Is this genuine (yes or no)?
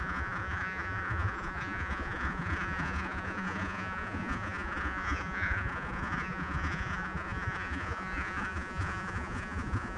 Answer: no